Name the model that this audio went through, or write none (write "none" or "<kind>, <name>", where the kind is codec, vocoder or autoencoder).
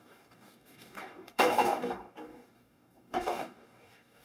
codec, DAC